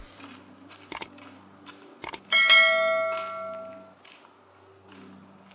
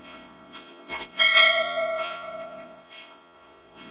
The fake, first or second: second